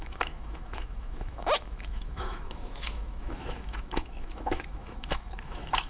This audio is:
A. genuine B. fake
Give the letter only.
B